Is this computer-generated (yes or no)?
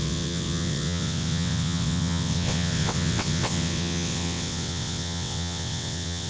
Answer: yes